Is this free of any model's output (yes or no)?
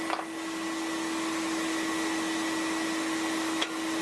yes